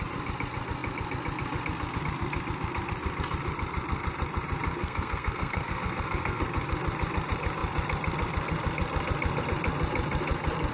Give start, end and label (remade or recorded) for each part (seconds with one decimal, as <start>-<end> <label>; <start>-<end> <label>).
0.0-4.8 recorded; 4.8-6.4 remade; 6.4-10.7 recorded